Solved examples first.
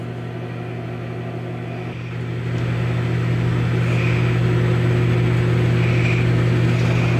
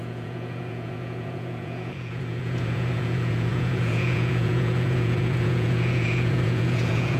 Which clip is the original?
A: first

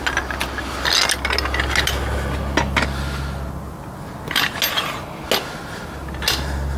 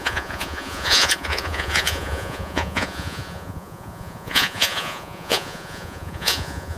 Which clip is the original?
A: first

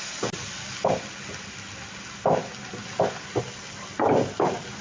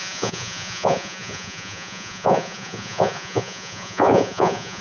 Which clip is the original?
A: first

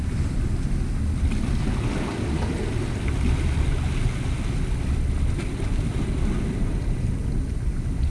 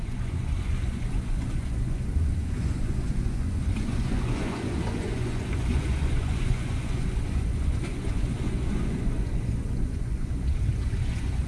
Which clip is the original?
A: first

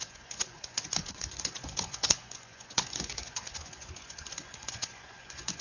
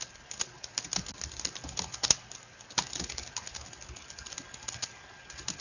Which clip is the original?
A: second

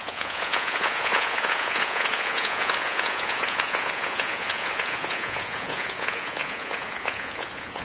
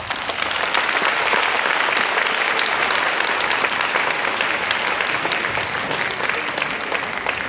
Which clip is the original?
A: second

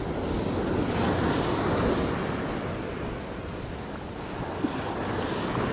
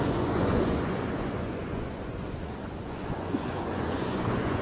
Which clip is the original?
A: first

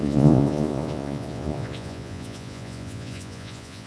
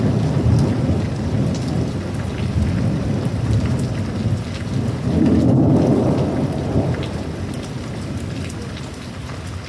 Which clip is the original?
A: second